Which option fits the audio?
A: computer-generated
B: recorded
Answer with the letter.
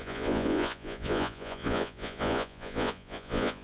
A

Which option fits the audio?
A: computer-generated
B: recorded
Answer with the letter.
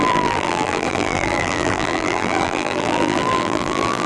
A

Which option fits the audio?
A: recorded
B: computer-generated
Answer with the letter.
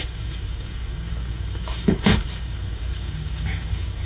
B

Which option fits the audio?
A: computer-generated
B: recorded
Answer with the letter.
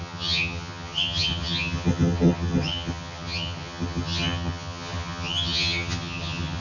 A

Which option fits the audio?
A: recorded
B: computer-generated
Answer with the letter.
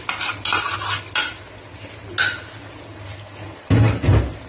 A